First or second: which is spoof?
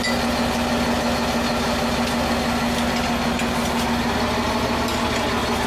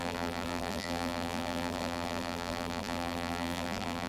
second